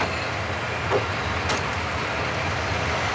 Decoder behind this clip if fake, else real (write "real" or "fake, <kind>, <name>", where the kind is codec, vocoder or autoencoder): real